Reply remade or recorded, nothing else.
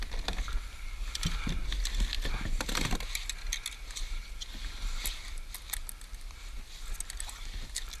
recorded